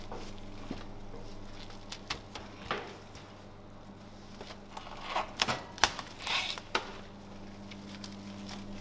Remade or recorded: recorded